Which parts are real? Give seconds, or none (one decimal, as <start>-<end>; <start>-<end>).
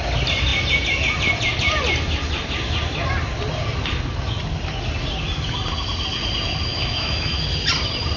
0.0-6.7; 7.4-8.2